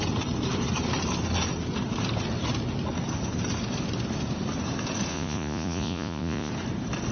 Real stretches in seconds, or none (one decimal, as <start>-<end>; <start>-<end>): 0.0-5.1; 6.5-7.1